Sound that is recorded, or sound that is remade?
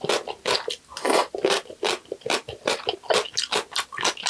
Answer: recorded